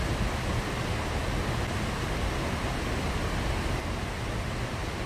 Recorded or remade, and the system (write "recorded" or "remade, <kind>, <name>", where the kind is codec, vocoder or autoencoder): recorded